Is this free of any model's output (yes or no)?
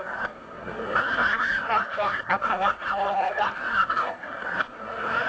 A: no